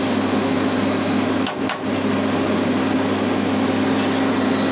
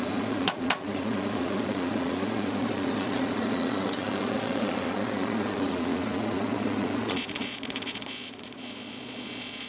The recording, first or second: first